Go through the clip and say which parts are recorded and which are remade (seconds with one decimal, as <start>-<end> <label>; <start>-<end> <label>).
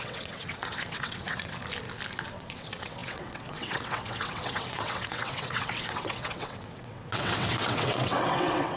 0.0-1.6 remade; 1.6-2.3 recorded; 2.3-8.8 remade